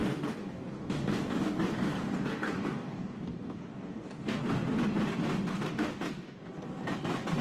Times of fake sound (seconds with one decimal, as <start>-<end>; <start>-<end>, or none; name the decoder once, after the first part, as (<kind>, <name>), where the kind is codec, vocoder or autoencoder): 0.0-4.4 (codec, DAC); 5.5-6.5